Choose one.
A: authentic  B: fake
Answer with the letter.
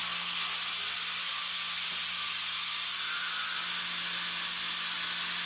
A